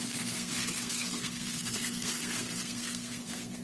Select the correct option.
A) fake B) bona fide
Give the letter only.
A